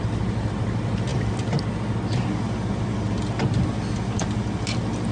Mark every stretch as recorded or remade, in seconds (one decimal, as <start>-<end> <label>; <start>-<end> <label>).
0.0-5.1 recorded